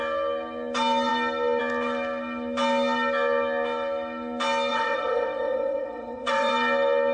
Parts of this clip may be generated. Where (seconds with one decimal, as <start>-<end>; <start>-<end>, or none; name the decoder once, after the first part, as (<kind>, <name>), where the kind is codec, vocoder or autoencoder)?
4.7-6.5 (vocoder, WaveNeXt)